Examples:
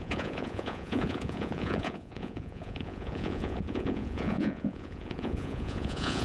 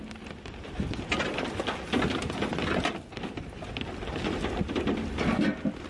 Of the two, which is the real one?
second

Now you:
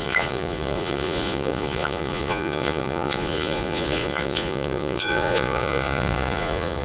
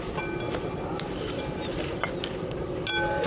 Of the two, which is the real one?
second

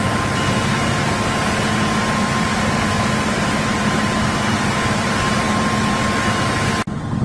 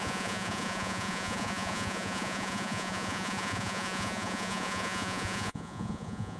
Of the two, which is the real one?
first